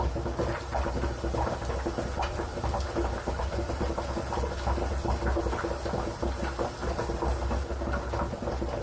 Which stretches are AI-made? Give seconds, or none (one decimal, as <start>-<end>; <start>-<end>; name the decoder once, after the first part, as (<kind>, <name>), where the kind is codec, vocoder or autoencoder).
none